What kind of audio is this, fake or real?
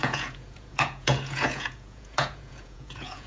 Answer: fake